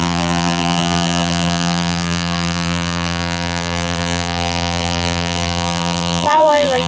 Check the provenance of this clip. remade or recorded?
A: remade